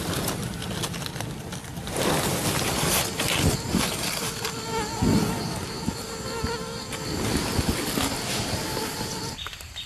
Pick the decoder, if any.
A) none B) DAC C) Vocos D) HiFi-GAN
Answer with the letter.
A